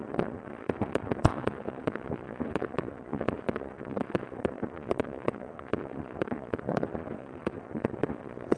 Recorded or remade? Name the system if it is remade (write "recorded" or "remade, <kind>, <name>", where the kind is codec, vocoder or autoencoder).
remade, vocoder, Vocos